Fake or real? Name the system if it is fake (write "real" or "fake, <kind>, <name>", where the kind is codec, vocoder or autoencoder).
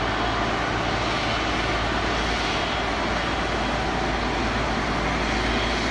real